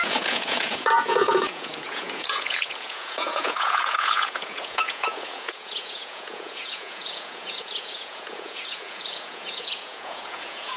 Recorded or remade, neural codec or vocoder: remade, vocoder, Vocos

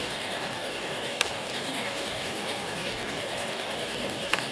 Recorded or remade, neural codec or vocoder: remade, codec, DAC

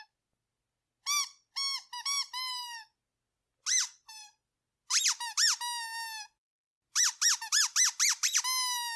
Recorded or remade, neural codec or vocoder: recorded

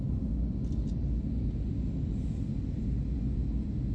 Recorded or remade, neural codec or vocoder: recorded